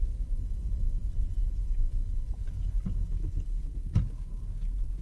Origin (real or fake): real